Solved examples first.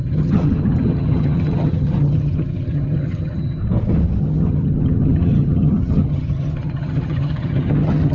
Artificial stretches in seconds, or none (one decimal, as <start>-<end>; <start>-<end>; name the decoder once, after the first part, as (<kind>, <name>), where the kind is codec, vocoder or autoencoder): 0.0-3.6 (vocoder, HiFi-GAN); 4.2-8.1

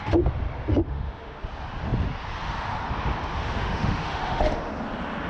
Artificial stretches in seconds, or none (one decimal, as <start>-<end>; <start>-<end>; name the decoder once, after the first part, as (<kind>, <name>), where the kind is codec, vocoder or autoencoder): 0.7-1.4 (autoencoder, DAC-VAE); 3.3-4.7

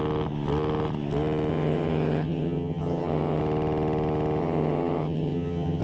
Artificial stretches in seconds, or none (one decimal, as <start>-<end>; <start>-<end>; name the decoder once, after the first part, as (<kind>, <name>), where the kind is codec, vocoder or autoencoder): 1.5-3.4 (vocoder, HiFi-GAN); 4.4-5.8